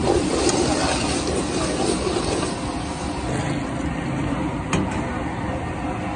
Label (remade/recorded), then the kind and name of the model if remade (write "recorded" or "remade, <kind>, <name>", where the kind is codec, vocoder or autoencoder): recorded